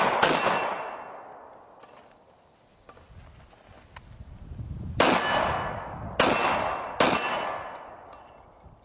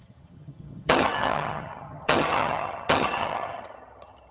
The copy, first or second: second